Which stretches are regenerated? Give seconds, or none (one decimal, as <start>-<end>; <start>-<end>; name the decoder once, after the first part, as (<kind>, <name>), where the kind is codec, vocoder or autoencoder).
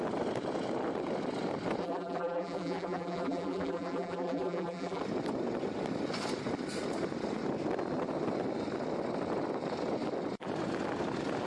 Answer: 1.8-5.0 (vocoder, BigVGAN v2)